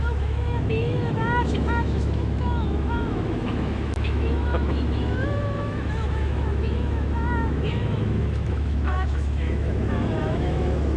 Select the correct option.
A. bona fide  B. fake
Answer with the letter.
B